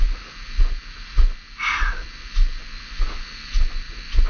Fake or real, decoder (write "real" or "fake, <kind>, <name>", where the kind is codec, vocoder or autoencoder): real